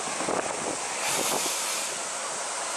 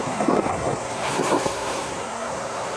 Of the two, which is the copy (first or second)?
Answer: second